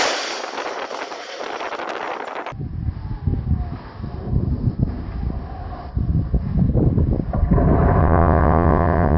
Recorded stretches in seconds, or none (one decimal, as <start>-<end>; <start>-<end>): 0.0-8.0